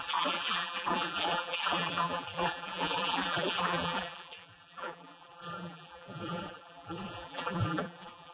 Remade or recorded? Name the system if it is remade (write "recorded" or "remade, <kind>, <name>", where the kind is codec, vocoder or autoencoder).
remade, vocoder, BigVGAN v2